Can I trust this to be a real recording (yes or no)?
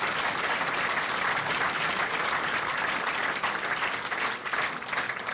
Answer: yes